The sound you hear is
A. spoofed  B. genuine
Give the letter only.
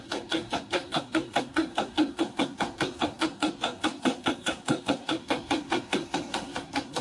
A